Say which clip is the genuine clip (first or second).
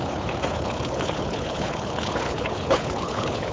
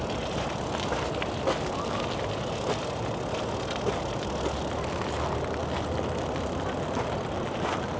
second